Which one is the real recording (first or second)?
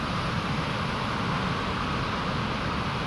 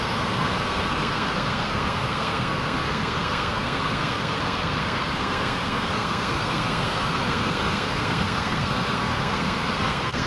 first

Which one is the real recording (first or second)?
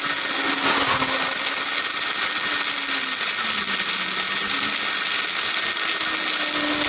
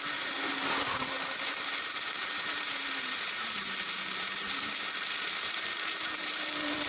first